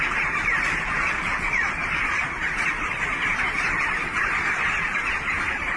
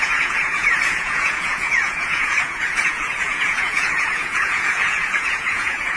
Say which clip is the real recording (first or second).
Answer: first